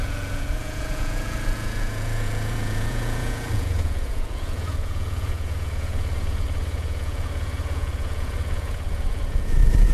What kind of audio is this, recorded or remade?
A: remade